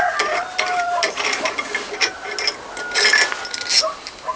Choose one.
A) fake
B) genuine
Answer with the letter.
B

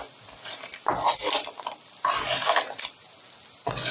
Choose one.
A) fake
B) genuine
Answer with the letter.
B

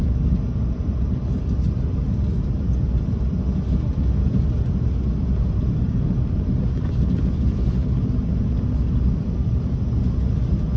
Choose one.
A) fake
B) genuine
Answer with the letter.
B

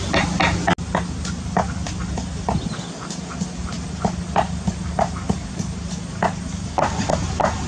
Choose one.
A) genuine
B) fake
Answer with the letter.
A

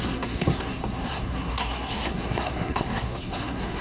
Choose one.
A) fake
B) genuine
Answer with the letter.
A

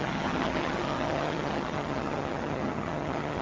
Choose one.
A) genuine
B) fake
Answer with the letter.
B